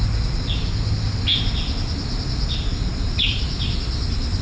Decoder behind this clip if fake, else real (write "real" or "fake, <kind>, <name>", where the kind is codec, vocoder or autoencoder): real